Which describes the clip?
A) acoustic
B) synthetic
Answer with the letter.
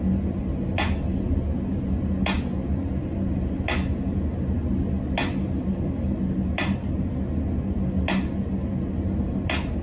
A